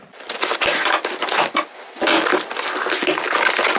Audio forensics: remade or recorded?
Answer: recorded